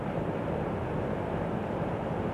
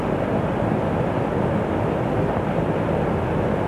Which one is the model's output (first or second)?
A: first